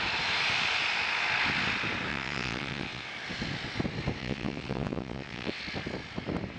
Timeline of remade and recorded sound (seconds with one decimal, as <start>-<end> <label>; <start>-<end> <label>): 0.0-2.1 recorded; 2.1-3.1 remade; 3.1-4.2 recorded; 4.2-5.6 remade; 5.6-6.6 recorded

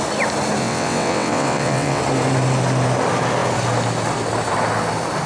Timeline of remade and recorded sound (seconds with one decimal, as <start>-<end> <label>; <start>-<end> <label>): 0.0-0.6 recorded; 0.6-2.0 remade; 2.0-5.3 recorded